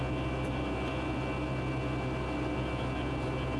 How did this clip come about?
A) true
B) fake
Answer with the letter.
A